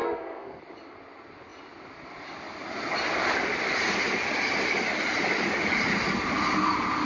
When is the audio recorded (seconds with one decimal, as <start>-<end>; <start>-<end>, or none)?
0.6-7.0